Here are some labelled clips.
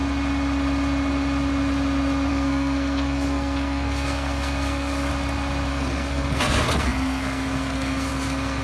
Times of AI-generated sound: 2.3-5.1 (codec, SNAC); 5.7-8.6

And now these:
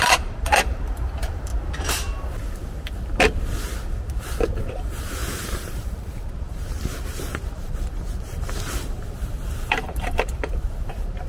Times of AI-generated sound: 0.0-1.5 (vocoder, BigVGAN v2); 4.6-11.3

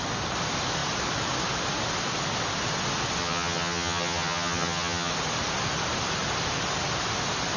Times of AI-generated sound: 3.2-5.1 (vocoder, HiFi-GAN)

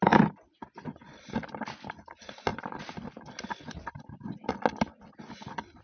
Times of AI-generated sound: none

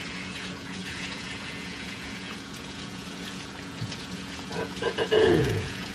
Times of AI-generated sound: 0.0-5.9 (vocoder, Vocos)

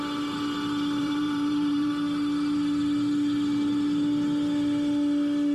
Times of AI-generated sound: 1.0-1.9 (vocoder, BigVGAN v2)

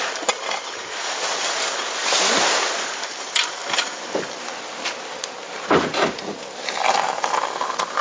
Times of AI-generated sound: none

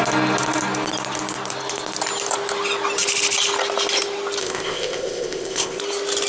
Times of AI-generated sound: 4.4-5.8 (codec, ZipCodec)